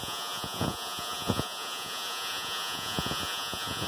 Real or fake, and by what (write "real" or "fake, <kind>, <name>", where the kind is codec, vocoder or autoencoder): fake, vocoder, Vocos